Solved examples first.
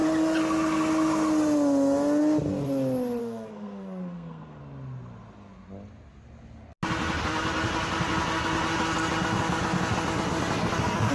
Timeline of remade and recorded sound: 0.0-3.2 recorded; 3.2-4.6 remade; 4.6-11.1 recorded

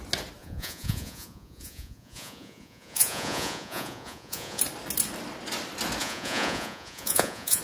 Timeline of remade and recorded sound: 0.0-0.4 recorded; 0.4-4.6 remade; 4.6-6.0 recorded; 6.0-7.6 remade

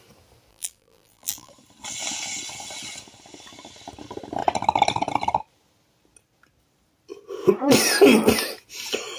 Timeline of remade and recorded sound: 0.0-0.5 recorded; 0.5-1.5 remade; 1.5-9.2 recorded

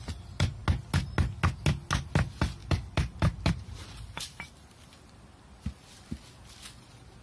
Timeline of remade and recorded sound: 0.0-2.6 recorded; 2.6-4.9 remade; 4.9-7.2 recorded

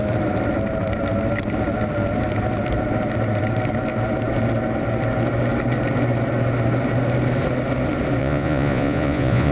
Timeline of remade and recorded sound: 0.0-8.2 recorded; 8.2-9.5 remade

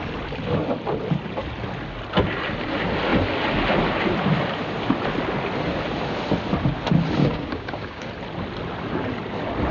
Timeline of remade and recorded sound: 0.0-7.2 recorded; 7.2-8.1 remade; 8.1-9.7 recorded

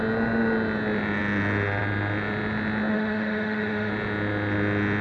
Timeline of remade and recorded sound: 0.0-2.9 recorded; 2.9-3.9 remade; 3.9-5.0 recorded

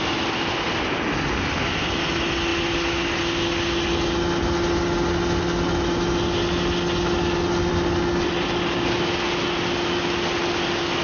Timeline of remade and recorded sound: 0.0-11.0 recorded